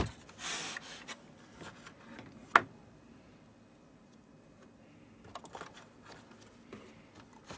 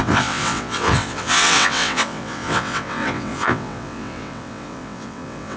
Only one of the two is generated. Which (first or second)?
second